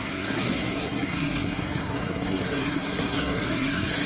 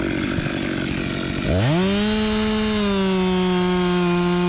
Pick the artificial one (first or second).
first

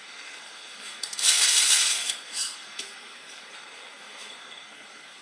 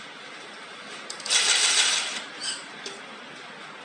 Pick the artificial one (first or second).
first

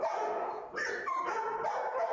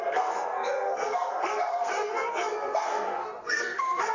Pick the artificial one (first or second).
second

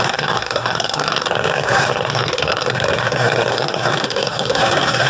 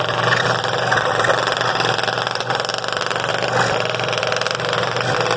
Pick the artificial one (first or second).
first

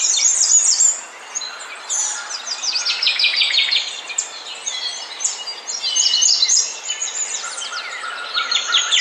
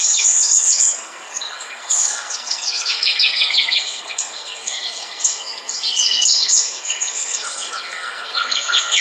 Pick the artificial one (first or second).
second